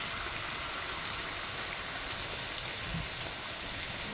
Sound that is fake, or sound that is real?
real